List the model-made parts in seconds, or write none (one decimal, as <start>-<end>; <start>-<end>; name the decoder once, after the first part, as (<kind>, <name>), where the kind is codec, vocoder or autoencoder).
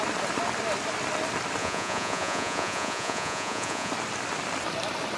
1.6-3.9 (vocoder, Vocos)